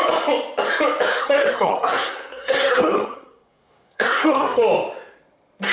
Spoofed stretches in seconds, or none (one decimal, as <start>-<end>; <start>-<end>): 1.2-4.6